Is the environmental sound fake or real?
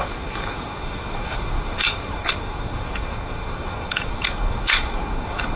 fake